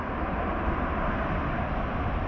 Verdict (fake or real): real